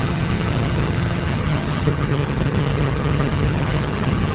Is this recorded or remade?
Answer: remade